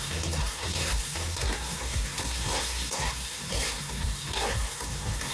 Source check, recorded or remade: remade